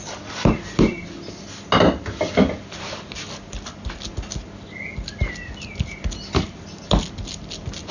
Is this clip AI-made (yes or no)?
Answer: no